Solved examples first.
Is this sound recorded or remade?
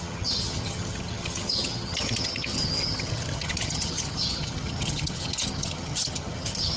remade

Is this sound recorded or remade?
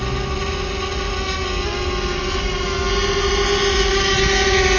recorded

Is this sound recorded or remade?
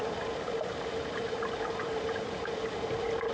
recorded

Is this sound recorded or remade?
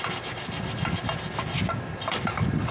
recorded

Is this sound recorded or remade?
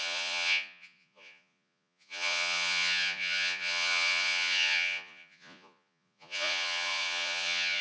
remade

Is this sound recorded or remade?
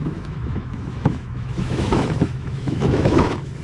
remade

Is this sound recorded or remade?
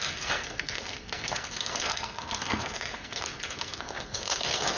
remade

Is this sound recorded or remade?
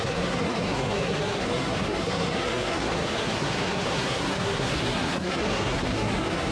remade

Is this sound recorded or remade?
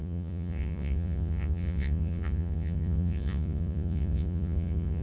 remade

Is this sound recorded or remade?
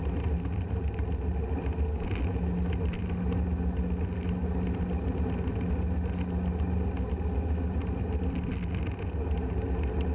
recorded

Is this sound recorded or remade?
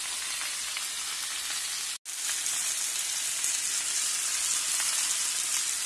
recorded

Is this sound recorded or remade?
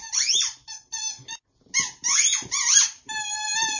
recorded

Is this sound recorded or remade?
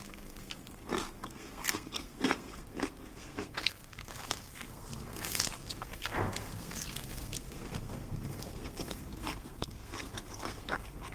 remade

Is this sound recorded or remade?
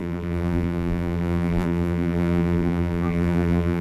remade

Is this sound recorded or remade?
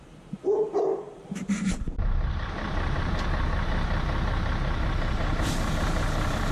remade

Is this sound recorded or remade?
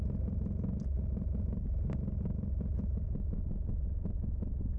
recorded